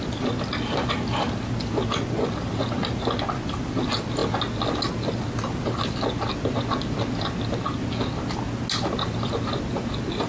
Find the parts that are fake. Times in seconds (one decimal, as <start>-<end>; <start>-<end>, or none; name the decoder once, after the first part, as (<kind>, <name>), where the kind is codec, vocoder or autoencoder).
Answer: none